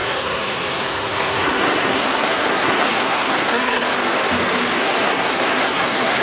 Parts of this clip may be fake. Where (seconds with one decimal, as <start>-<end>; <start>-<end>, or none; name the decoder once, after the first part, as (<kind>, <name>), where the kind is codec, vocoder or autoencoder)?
0.0-3.9 (codec, SNAC); 4.8-6.2